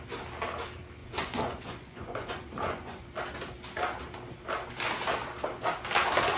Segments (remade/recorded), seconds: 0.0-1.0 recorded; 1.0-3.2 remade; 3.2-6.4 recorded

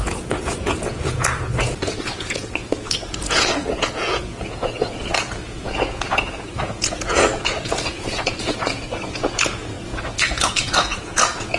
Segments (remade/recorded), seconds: 0.0-11.6 remade

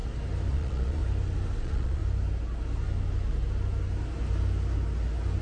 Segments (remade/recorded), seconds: 0.0-0.5 recorded; 0.5-1.0 remade; 1.0-1.6 recorded; 1.6-2.0 remade; 2.0-5.4 recorded